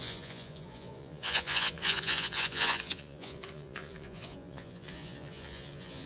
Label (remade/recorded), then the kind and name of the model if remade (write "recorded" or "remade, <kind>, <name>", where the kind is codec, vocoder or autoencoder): remade, vocoder, Vocos